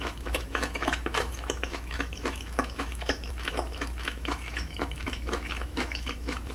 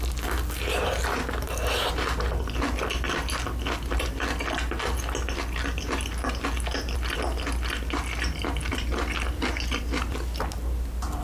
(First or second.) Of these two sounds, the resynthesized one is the first